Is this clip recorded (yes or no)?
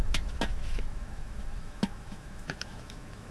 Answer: no